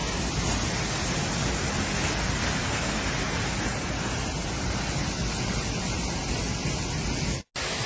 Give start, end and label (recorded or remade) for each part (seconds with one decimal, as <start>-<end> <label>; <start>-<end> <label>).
0.0-7.9 recorded